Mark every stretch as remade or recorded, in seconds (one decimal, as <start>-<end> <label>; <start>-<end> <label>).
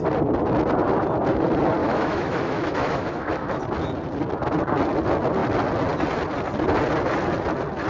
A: 0.0-1.8 recorded; 1.8-3.6 remade; 3.6-7.9 recorded